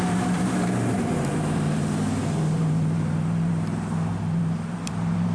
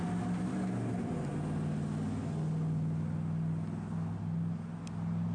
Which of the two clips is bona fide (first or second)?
second